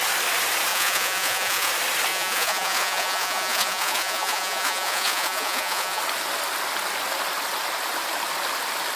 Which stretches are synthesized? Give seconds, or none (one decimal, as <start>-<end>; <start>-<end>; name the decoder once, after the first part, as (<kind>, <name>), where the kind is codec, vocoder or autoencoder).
0.7-1.7 (vocoder, Vocos); 2.1-6.0